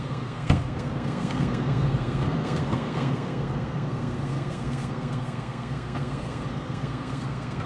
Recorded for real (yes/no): no